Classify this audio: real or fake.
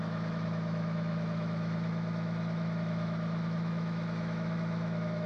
fake